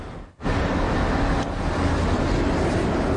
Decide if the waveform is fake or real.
real